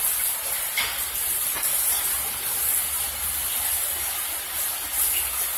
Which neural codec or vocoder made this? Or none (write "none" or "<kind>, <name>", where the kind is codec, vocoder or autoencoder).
none